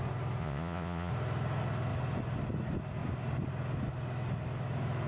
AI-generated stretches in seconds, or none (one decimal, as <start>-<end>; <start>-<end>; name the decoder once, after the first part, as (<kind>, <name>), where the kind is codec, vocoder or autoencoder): 0.4-1.1 (vocoder, Vocos)